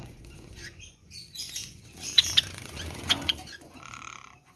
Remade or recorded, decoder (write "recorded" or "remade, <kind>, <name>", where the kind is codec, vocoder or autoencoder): remade, vocoder, Vocos